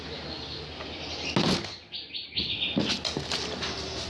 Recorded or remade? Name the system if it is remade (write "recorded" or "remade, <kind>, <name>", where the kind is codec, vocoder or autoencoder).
recorded